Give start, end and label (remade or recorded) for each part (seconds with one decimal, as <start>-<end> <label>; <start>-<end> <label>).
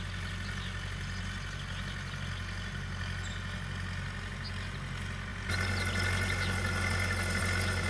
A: 0.0-7.9 recorded